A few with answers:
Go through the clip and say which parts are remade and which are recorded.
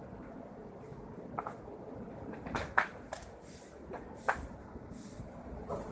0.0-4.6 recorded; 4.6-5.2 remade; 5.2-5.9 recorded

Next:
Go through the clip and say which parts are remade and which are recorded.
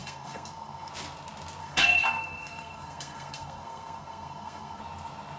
0.0-0.9 remade; 0.9-1.6 recorded; 1.6-4.8 remade; 4.8-5.4 recorded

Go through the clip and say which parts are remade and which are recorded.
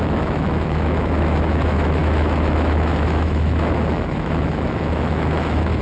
0.0-5.8 remade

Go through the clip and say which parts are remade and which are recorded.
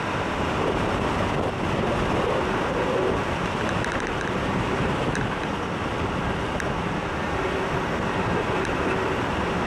0.0-1.1 remade; 1.1-3.4 recorded; 3.4-5.5 remade; 5.5-9.7 recorded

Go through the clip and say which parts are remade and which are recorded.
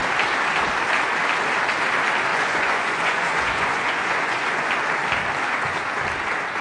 0.0-2.3 recorded; 2.3-4.7 remade; 4.7-6.6 recorded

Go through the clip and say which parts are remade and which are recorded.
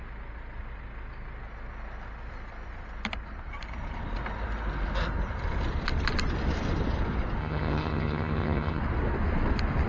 0.0-7.4 recorded; 7.4-8.8 remade; 8.8-9.9 recorded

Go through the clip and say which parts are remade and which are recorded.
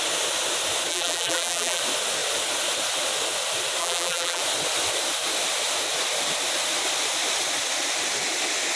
0.0-0.9 recorded; 0.9-1.8 remade; 1.8-3.8 recorded; 3.8-4.4 remade; 4.4-8.8 recorded